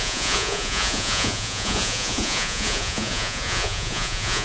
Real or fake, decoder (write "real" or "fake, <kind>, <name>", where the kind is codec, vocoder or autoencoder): fake, vocoder, Vocos